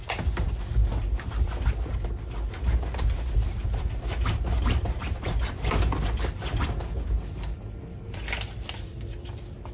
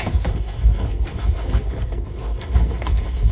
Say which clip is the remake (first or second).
second